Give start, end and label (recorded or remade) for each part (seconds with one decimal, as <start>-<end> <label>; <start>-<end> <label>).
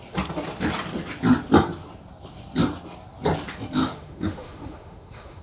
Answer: 0.0-3.8 recorded; 3.8-5.4 remade